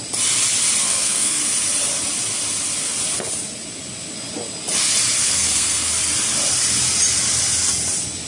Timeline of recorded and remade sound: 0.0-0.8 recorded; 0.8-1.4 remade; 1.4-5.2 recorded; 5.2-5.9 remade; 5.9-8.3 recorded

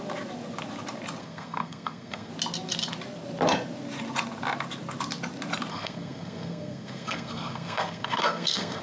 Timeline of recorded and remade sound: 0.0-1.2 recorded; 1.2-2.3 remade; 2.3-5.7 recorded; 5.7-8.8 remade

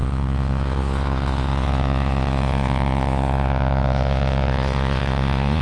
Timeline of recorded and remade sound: 0.0-5.6 remade

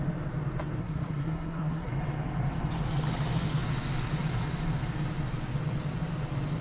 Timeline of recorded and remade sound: 0.0-0.8 recorded; 0.8-1.9 remade; 1.9-6.6 recorded

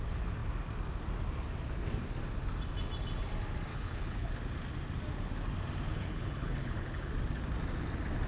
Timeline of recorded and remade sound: 0.0-3.7 recorded; 3.7-4.3 remade; 4.3-5.9 recorded; 5.9-7.1 remade; 7.1-8.3 recorded